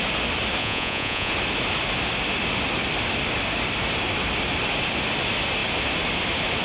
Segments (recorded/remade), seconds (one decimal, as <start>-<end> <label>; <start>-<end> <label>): 0.0-0.6 recorded; 0.6-1.3 remade; 1.3-6.6 recorded